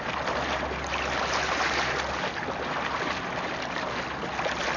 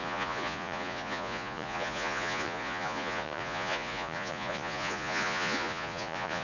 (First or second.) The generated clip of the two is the second